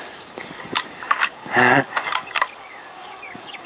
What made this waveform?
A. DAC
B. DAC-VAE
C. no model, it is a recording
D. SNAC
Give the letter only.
A